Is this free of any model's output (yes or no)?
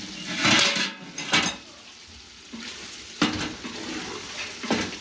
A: yes